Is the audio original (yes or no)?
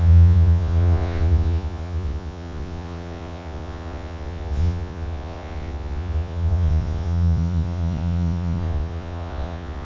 no